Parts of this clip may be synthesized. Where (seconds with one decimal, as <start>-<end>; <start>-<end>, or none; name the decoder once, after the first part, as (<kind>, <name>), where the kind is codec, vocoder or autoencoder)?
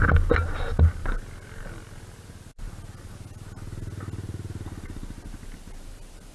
none